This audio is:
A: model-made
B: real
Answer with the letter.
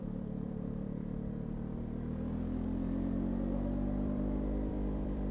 A